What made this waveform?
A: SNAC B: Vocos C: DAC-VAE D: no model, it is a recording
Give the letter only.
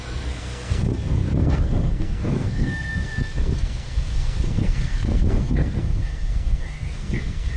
A